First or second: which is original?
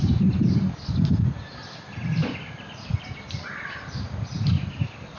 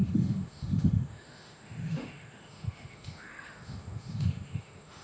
first